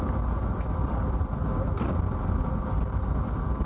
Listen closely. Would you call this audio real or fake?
real